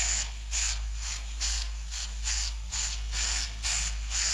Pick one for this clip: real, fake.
fake